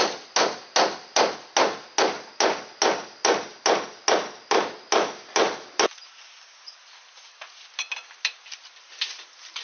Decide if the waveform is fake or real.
real